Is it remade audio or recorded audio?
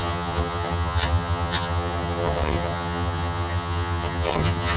remade